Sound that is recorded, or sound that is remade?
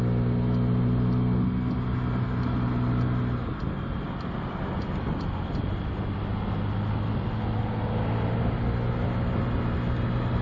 recorded